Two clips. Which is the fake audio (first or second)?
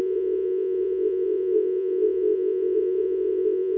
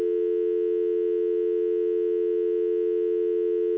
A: first